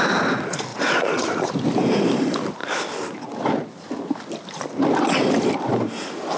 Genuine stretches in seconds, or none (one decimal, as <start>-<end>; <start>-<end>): 0.0-0.7; 1.5-6.4